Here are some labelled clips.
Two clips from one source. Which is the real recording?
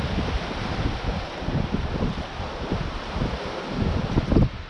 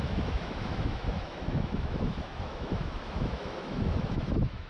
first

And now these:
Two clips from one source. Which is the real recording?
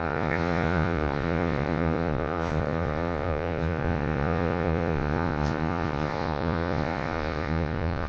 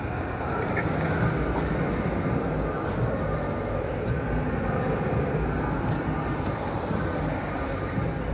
second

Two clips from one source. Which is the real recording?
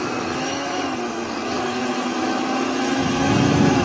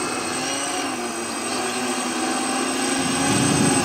second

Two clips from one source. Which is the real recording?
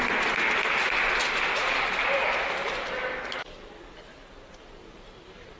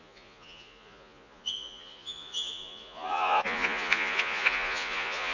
first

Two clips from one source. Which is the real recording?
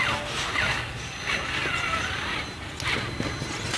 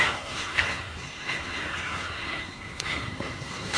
first